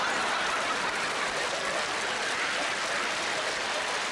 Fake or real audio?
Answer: real